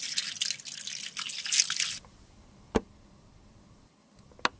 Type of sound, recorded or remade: recorded